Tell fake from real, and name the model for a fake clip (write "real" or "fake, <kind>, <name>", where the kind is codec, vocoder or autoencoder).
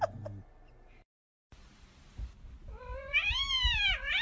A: real